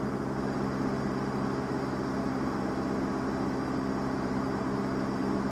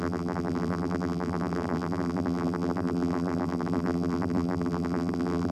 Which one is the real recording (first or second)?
first